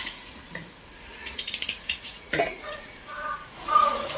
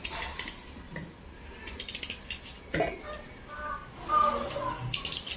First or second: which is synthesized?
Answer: first